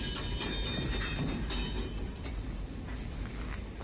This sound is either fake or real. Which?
real